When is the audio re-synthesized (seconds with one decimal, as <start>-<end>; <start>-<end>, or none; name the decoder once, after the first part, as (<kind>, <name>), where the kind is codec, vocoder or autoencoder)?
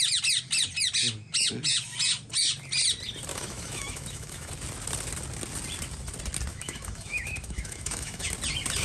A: 3.3-4.5 (autoencoder, DAC-VAE); 6.5-8.3